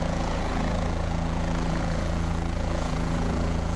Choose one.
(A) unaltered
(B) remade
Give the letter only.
B